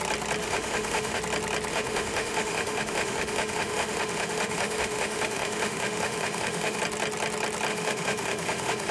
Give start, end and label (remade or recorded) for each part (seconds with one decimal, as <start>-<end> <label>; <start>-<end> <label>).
0.0-0.4 recorded; 0.4-1.2 remade; 1.2-1.7 recorded; 1.7-6.8 remade; 6.8-7.7 recorded; 7.7-8.9 remade